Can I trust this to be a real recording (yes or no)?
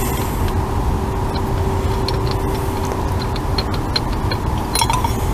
yes